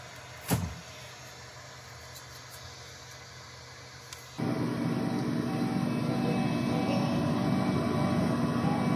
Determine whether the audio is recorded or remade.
recorded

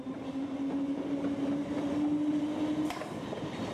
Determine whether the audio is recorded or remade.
recorded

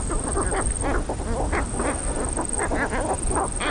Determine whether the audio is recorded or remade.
recorded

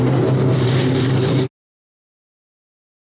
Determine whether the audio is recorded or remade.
recorded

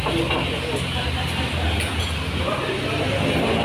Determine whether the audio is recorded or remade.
recorded